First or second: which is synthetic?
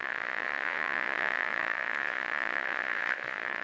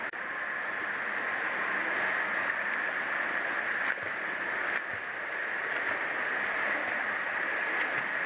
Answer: first